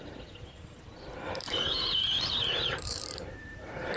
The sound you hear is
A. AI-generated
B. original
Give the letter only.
A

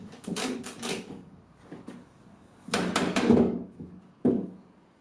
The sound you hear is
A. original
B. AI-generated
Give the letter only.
B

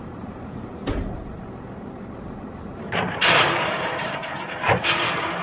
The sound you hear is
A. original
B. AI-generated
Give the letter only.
B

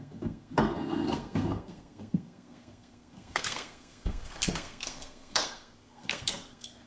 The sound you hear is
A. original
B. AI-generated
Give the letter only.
B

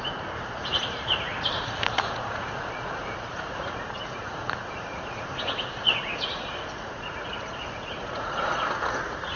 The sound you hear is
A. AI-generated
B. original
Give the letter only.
A